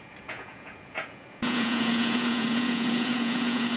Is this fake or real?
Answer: fake